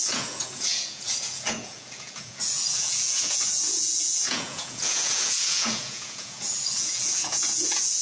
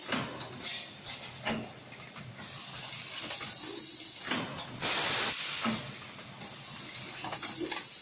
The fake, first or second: first